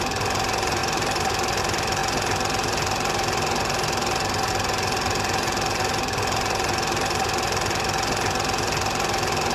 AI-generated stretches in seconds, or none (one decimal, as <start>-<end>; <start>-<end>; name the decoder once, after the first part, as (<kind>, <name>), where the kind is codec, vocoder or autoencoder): 0.8-1.6 (vocoder, BigVGAN v2)